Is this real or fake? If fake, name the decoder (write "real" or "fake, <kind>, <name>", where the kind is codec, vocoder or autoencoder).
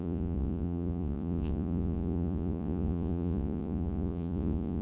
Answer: fake, vocoder, Vocos